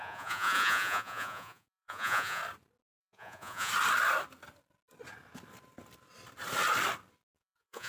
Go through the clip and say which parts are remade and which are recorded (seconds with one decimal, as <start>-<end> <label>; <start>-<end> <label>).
0.0-2.4 remade; 2.4-3.0 recorded; 3.0-3.7 remade; 3.7-7.4 recorded; 7.4-7.9 remade